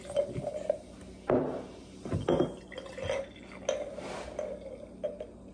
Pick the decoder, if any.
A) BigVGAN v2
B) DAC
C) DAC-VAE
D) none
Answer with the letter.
D